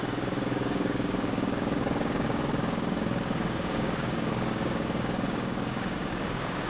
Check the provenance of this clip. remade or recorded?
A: remade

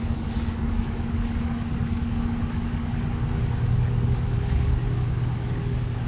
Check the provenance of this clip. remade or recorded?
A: remade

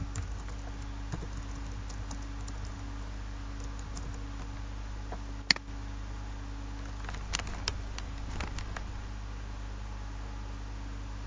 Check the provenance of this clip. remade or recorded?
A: recorded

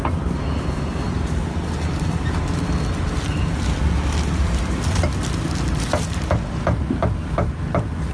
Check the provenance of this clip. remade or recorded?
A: recorded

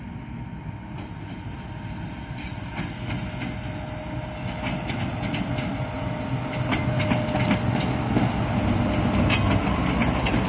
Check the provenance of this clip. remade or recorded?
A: recorded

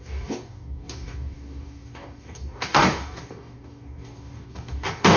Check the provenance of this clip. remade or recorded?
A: remade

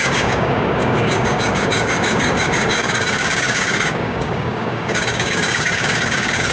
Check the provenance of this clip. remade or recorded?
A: remade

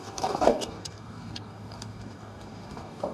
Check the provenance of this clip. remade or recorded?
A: remade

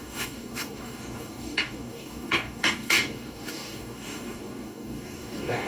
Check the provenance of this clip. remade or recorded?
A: remade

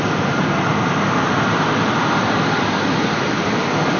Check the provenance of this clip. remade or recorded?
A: recorded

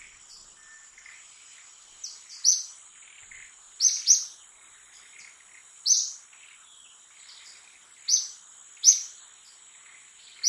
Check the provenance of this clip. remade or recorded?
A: recorded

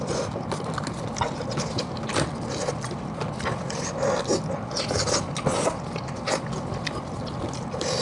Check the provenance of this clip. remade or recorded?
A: recorded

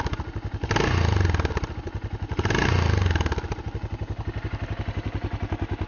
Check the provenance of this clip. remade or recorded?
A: recorded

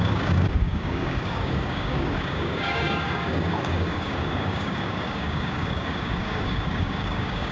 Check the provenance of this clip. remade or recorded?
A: remade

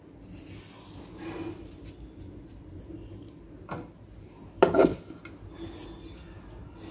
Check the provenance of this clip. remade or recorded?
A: recorded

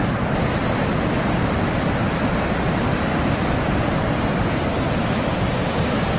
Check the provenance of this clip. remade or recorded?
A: recorded